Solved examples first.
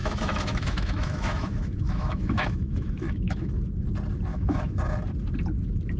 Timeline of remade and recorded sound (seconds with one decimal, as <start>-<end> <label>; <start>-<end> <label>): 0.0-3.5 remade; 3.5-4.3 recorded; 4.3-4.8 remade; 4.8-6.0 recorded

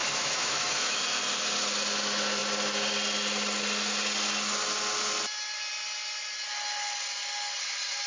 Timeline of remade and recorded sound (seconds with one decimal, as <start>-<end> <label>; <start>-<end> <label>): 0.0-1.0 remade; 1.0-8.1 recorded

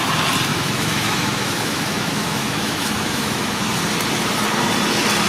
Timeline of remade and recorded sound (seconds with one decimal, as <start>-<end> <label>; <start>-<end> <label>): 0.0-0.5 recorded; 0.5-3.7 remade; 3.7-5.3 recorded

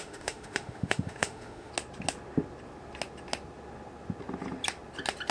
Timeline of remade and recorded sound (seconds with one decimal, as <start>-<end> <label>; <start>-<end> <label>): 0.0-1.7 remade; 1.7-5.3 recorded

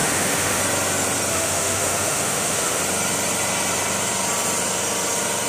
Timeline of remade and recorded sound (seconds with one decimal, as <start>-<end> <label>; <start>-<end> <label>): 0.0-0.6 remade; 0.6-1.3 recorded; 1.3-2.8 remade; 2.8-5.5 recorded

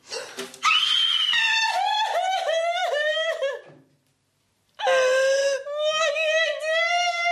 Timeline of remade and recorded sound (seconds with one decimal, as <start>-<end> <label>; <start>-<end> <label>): 0.0-2.8 recorded; 2.8-3.5 remade; 3.5-5.4 recorded; 5.4-6.1 remade; 6.1-7.3 recorded